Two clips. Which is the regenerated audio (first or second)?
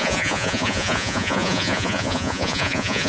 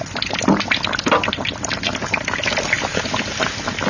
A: first